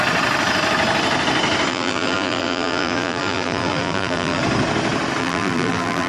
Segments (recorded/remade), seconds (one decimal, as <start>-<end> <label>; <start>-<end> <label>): 0.0-1.7 recorded; 1.7-4.4 remade; 4.4-5.2 recorded; 5.2-6.1 remade